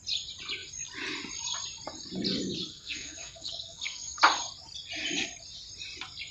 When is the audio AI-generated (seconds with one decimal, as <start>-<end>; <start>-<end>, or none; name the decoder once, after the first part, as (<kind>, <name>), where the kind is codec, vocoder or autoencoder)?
2.7-4.2 (codec, SNAC)